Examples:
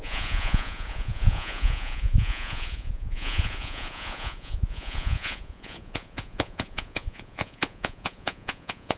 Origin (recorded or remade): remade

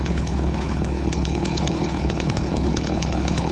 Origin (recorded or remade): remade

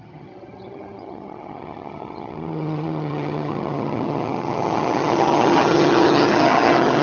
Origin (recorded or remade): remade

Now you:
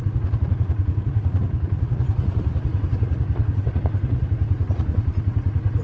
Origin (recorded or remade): remade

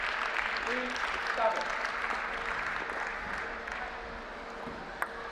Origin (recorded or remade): recorded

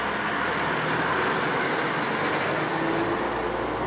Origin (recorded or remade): recorded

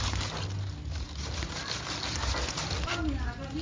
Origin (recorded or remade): recorded